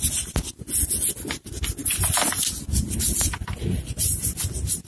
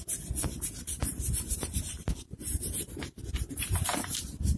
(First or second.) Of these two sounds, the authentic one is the first